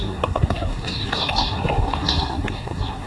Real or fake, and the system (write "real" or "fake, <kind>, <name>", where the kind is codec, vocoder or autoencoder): fake, codec, SNAC